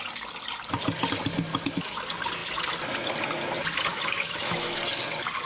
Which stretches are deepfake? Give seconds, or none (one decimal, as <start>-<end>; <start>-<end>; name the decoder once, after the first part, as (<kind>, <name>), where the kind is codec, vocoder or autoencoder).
1.5-2.0 (autoencoder, DAC-VAE); 3.9-4.8